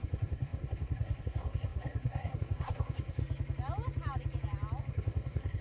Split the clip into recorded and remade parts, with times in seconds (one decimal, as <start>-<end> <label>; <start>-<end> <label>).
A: 0.0-3.2 remade; 3.2-4.8 recorded; 4.8-5.6 remade